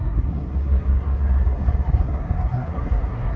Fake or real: fake